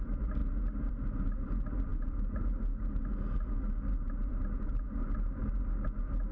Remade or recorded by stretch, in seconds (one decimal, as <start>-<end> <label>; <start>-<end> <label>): 0.0-6.3 recorded